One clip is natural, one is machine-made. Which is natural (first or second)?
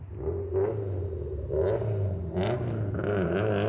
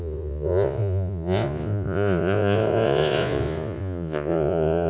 first